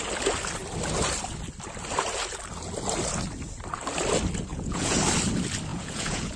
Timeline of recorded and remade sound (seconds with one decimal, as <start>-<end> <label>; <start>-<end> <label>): 0.0-4.5 recorded; 4.5-5.0 remade; 5.0-5.7 recorded; 5.7-6.4 remade